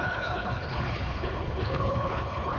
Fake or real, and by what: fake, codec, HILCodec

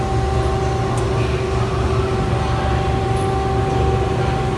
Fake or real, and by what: real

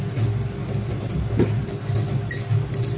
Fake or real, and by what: real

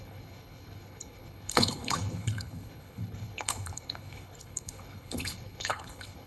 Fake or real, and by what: fake, codec, HILCodec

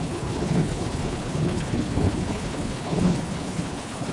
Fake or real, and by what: fake, codec, HILCodec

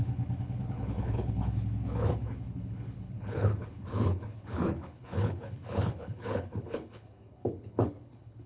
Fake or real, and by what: fake, codec, HILCodec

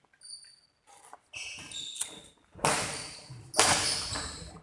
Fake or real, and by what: real